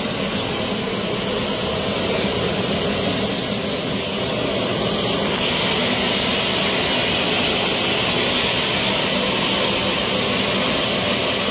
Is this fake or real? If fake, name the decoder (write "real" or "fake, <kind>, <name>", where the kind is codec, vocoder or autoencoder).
real